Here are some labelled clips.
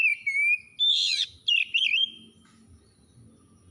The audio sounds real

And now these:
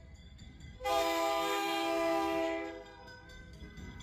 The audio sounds fake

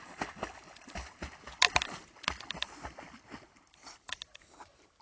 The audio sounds real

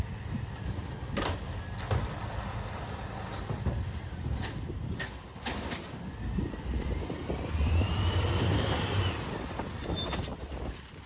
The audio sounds fake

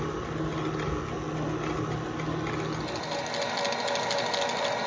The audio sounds real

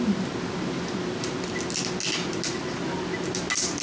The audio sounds real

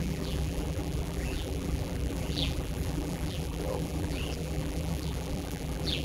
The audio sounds fake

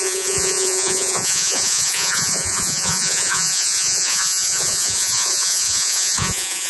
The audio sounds fake